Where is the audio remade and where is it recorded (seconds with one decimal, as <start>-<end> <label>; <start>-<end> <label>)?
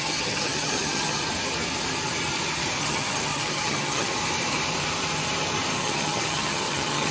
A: 0.0-1.2 remade; 1.2-2.8 recorded; 2.8-4.2 remade; 4.2-5.8 recorded; 5.8-7.1 remade